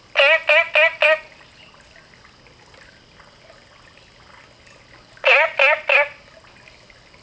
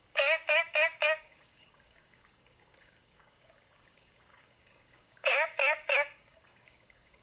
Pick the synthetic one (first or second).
second